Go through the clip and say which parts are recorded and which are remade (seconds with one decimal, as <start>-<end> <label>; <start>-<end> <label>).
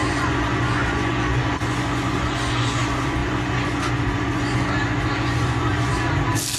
0.0-5.9 remade; 5.9-6.6 recorded